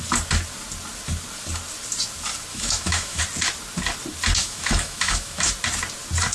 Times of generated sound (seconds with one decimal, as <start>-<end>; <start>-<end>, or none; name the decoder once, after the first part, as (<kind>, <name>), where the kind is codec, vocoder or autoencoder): 2.5-3.2 (autoencoder, DAC-VAE); 4.4-5.5